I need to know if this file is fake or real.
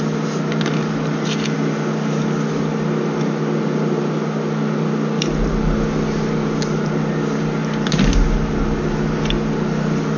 real